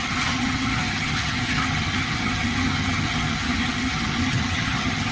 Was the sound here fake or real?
fake